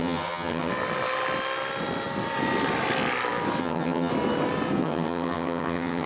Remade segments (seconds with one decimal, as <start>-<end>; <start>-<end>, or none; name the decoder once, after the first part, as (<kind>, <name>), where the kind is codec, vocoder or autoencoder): 0.0-0.7 (vocoder, HiFi-GAN); 3.6-4.1; 4.8-6.1

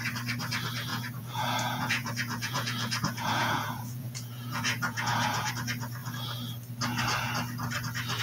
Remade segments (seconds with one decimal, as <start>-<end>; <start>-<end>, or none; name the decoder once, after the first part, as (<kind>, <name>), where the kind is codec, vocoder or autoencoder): 0.9-5.5 (vocoder, Vocos)

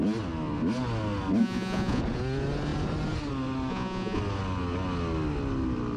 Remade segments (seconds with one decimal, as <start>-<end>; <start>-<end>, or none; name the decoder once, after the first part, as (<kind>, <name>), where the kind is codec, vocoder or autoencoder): 1.4-2.0 (vocoder, Vocos); 3.7-4.2